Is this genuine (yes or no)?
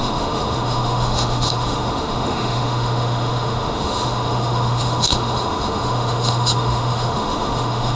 no